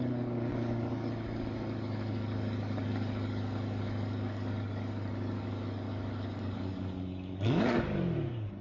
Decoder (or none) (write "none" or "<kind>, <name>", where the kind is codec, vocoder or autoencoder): codec, DAC